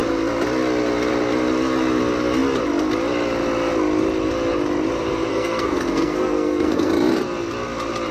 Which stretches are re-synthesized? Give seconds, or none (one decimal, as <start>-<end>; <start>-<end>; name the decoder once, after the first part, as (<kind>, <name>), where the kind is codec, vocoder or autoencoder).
5.3-6.9 (codec, SNAC)